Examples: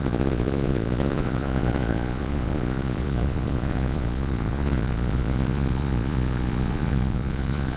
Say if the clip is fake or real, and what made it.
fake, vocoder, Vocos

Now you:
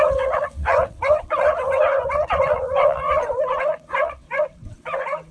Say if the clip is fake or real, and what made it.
fake, vocoder, WaveNeXt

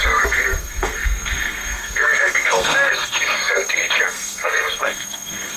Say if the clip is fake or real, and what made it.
fake, codec, SNAC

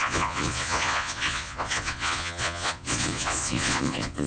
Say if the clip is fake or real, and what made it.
fake, vocoder, Vocos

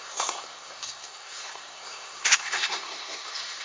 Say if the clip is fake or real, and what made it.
fake, codec, SNAC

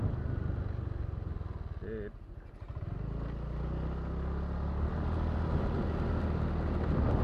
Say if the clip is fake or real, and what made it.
real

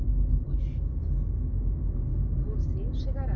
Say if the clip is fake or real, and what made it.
real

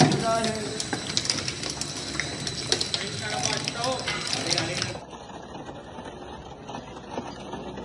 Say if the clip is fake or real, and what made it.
real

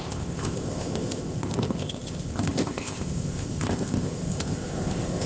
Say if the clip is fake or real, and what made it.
fake, codec, ZipCodec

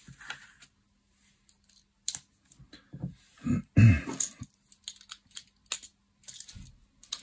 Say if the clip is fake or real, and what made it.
real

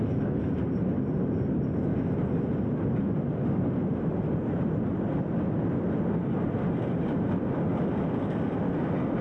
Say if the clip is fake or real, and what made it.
real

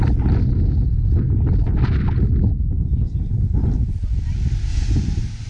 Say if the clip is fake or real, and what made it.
real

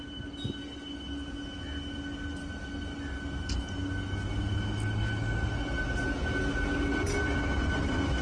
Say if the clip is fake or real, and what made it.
real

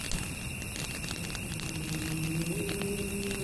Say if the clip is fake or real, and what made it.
real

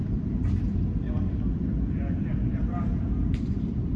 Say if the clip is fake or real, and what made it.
fake, vocoder, BigVGAN v2